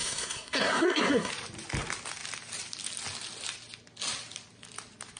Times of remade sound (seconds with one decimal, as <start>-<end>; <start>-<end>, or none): 0.0-1.3